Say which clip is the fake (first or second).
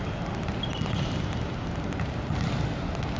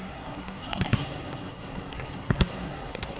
second